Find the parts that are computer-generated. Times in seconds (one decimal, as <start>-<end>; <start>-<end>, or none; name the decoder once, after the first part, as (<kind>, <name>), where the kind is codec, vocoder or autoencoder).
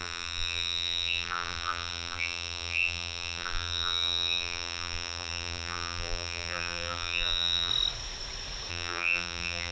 0.0-7.7 (vocoder, BigVGAN v2); 8.7-9.7